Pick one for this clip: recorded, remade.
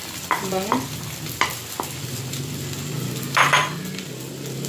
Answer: recorded